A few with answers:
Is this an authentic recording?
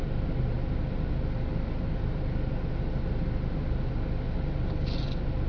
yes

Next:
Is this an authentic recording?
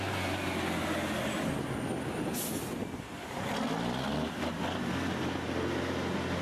yes